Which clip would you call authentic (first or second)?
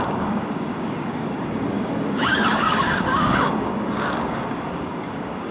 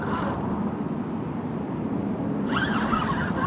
second